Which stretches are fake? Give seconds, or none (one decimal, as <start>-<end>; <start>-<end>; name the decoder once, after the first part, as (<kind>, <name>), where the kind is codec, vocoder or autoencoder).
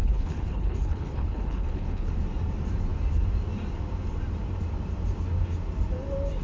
0.0-2.1 (codec, HILCodec)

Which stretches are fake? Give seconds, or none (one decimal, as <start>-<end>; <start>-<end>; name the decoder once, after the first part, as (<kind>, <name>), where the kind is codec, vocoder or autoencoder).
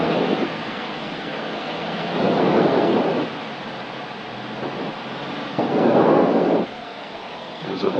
0.0-2.9 (codec, SNAC); 5.5-8.0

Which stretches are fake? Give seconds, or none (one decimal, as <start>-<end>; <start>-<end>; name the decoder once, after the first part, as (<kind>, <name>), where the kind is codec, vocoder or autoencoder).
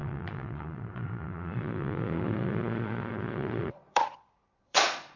0.0-5.2 (vocoder, Vocos)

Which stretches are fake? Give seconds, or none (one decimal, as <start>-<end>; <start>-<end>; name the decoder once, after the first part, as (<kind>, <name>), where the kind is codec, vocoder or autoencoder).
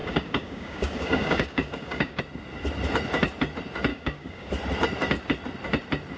0.0-2.2 (codec, DAC); 3.9-4.5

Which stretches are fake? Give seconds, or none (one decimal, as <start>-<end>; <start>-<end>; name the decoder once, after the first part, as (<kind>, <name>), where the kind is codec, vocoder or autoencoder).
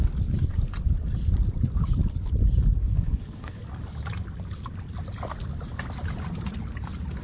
2.8-3.6 (codec, SNAC)